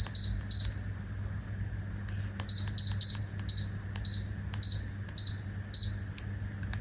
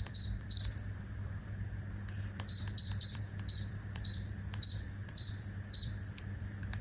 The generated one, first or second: second